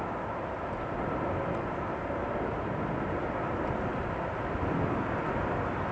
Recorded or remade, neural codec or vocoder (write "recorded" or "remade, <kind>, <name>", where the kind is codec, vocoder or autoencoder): recorded